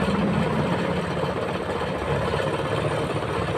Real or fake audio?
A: real